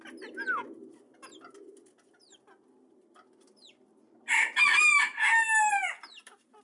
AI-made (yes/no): no